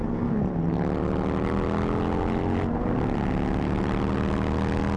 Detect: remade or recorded recorded